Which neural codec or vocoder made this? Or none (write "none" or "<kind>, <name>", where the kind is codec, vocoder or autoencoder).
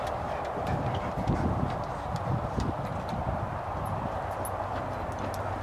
none